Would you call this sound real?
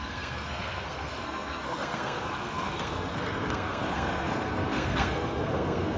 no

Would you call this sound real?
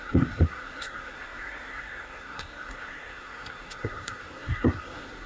no